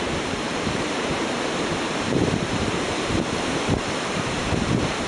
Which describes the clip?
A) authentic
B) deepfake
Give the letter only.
B